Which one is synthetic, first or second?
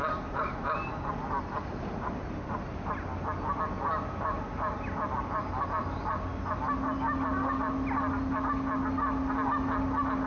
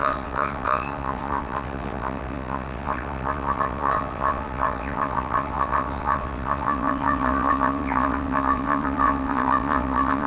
second